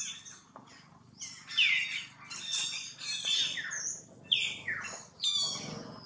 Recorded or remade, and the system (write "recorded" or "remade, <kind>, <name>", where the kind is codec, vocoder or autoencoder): recorded